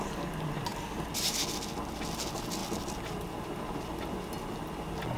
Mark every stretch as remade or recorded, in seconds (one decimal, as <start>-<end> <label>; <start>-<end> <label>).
0.0-5.2 recorded